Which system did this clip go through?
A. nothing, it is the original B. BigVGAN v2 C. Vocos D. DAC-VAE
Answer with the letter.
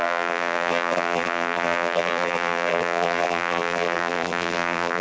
B